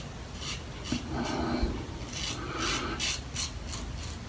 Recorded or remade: recorded